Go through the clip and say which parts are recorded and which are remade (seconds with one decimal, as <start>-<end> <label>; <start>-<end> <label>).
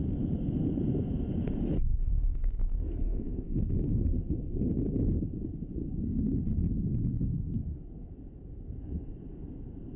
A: 0.0-1.9 recorded; 1.9-4.7 remade; 4.7-7.3 recorded; 7.3-8.1 remade; 8.1-10.0 recorded